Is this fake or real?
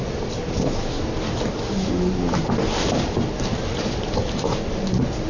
real